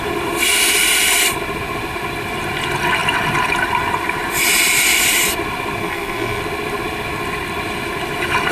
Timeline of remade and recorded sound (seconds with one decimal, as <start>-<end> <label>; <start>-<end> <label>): 0.0-5.8 recorded; 5.8-6.4 remade; 6.4-8.5 recorded